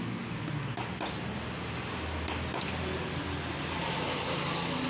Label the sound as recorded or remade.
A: recorded